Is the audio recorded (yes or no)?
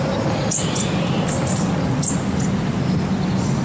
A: yes